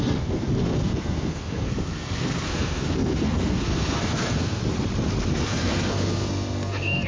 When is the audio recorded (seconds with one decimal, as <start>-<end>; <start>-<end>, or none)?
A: 4.6-5.3